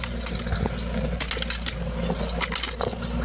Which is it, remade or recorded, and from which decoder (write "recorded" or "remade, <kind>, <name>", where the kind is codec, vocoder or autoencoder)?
recorded